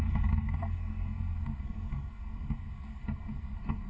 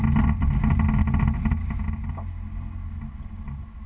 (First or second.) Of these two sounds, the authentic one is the second